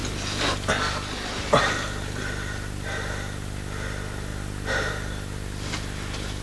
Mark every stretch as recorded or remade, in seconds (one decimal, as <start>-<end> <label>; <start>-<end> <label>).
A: 0.0-6.4 recorded